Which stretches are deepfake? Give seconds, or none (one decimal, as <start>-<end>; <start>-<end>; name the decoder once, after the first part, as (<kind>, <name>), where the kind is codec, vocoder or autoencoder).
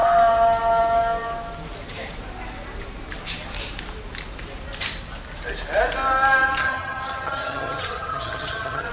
6.6-8.9 (vocoder, HiFi-GAN)